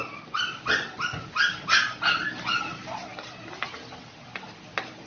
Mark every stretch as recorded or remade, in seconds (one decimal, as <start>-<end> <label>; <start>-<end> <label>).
0.0-5.1 recorded